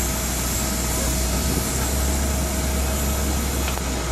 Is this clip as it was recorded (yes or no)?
yes